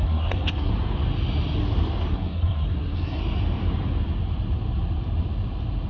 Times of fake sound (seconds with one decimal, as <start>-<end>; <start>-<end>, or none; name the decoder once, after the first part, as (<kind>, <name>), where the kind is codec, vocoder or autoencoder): 0.0-0.7 (codec, SNAC); 2.1-3.2